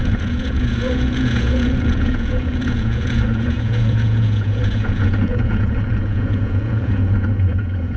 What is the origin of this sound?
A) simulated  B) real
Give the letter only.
A